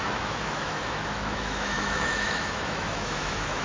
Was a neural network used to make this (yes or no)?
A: yes